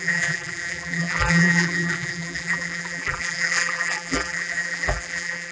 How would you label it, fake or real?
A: fake